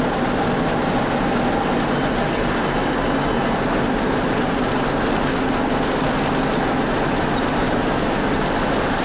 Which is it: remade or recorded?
recorded